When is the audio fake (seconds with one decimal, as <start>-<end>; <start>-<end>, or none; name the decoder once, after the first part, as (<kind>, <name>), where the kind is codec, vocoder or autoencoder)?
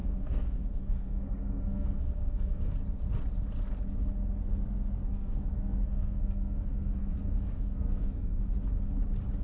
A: 0.0-2.7 (codec, SNAC); 4.4-8.4